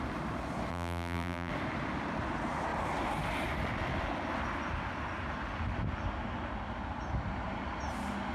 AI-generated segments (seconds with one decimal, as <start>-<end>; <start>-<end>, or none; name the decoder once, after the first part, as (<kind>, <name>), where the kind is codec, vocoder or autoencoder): 0.7-1.5 (vocoder, BigVGAN v2)